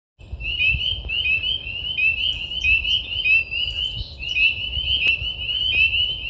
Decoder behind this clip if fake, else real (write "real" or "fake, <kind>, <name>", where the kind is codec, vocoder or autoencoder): real